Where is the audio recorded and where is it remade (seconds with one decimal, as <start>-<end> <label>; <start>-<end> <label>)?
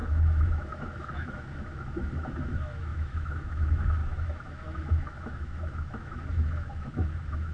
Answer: 0.0-7.5 remade